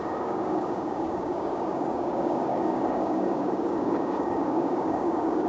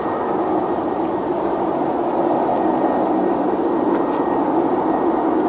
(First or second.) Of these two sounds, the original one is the second